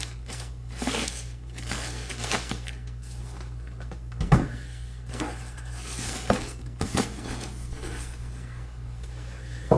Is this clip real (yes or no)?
no